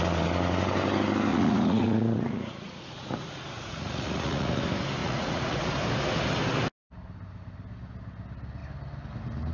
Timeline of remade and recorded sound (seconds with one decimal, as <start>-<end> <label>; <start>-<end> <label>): 0.0-1.3 recorded; 1.3-4.6 remade; 4.6-5.0 recorded; 5.0-5.7 remade; 5.7-9.5 recorded